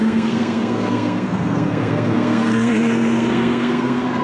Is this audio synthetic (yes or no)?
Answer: yes